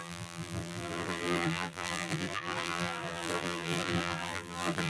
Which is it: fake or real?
fake